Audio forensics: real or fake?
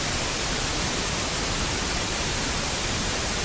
real